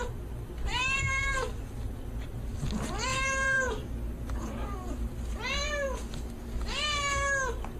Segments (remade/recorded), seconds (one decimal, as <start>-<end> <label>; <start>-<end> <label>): 0.0-3.1 recorded; 3.1-3.9 remade; 3.9-7.8 recorded